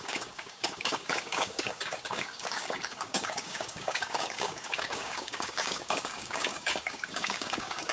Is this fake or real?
fake